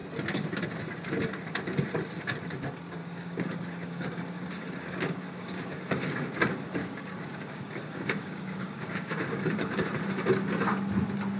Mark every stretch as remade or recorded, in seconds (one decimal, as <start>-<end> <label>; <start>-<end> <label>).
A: 0.0-3.0 recorded; 3.0-6.1 remade; 6.1-6.8 recorded; 6.8-9.9 remade; 9.9-11.4 recorded